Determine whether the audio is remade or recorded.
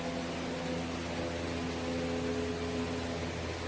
recorded